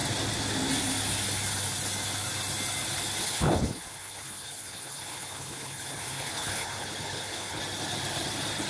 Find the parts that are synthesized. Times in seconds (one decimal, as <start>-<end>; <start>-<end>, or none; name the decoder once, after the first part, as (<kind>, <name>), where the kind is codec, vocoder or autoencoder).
3.2-7.6 (codec, HILCodec)